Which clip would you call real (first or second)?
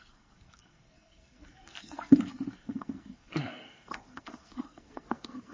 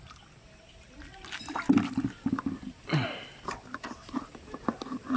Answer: second